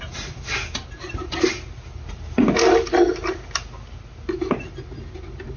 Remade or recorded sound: recorded